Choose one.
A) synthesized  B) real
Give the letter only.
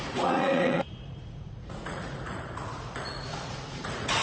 A